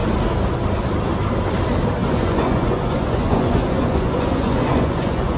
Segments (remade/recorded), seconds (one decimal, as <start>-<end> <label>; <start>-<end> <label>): 0.0-2.0 recorded; 2.0-5.4 remade